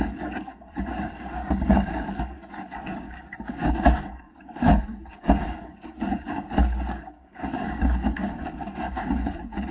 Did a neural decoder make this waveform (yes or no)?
yes